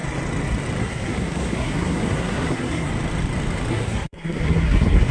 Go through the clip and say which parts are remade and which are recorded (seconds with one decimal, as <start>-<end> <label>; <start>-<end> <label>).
0.0-0.8 recorded; 0.8-2.9 remade; 2.9-3.7 recorded; 3.7-5.1 remade